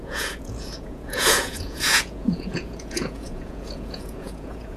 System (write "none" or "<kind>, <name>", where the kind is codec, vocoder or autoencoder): vocoder, Vocos